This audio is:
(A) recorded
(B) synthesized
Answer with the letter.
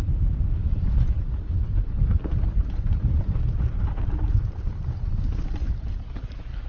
B